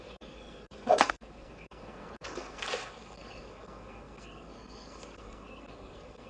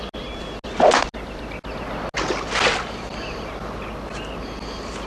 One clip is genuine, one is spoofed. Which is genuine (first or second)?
second